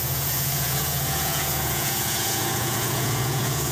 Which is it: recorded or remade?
remade